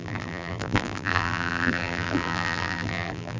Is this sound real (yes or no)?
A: no